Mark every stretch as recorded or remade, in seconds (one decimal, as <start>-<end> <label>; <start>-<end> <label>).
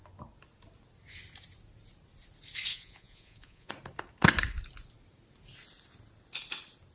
0.0-2.7 recorded; 2.7-3.7 remade; 3.7-6.9 recorded